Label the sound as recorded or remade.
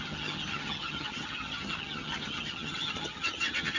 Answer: remade